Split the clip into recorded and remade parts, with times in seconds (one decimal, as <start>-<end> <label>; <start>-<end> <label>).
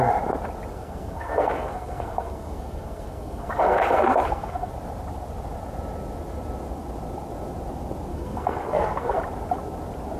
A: 0.0-0.7 recorded; 0.7-4.7 remade; 4.7-8.1 recorded; 8.1-9.2 remade; 9.2-10.2 recorded